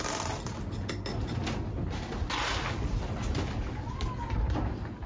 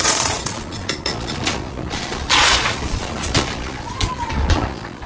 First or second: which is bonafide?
first